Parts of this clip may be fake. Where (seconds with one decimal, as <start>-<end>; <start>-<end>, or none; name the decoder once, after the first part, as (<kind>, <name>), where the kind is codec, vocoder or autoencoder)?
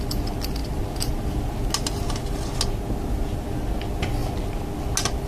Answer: none